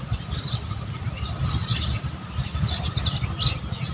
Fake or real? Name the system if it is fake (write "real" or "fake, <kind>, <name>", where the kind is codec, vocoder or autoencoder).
real